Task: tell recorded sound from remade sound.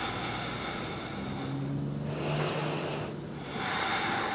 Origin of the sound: recorded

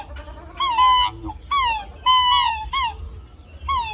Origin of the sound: recorded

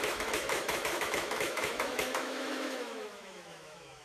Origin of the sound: remade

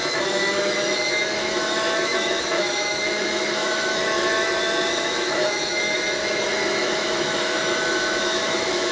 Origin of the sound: remade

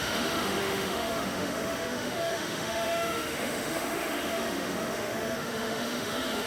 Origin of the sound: remade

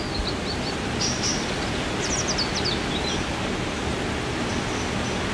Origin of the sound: recorded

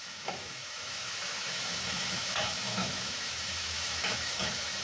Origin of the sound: remade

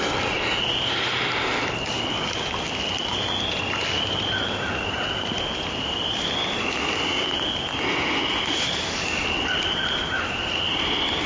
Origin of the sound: recorded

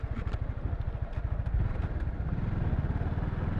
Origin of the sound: recorded